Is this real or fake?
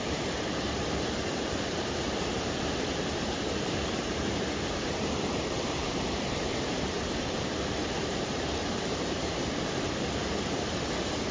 fake